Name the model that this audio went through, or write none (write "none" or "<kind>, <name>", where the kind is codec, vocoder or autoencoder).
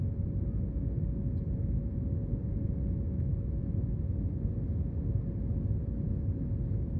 none